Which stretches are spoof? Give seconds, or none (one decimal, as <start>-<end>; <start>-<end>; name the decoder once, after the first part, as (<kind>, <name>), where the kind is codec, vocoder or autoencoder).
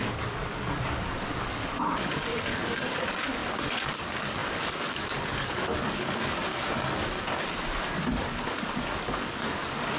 0.0-6.5 (codec, DAC); 8.1-10.0